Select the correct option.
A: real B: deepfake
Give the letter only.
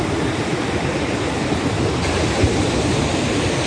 A